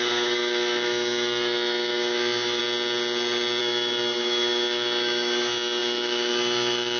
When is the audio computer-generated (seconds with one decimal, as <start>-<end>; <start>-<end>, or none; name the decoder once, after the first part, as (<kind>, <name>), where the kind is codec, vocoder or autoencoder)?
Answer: 0.0-2.6 (autoencoder, DAC-VAE); 3.6-7.0